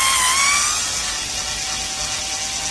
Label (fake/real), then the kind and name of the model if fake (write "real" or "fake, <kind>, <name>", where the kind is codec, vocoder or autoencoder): real